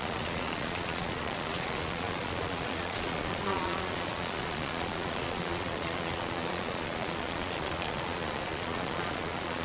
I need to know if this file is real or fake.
fake